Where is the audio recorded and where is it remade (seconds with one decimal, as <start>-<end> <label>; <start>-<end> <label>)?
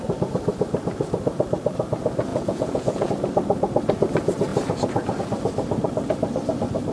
0.0-2.3 recorded; 2.3-3.1 remade; 3.1-6.9 recorded